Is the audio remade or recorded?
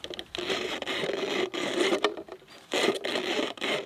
recorded